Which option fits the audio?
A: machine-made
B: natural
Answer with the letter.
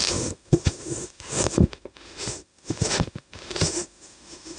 A